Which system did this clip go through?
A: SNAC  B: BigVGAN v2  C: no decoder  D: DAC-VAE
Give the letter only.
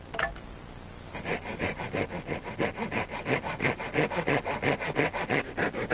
C